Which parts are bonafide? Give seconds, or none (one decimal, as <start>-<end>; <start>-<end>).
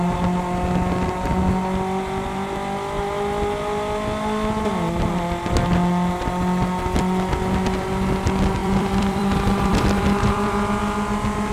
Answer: 0.0-8.6; 10.7-11.5